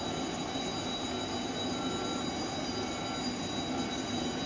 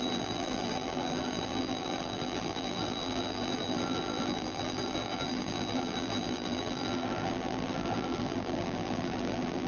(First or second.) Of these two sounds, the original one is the first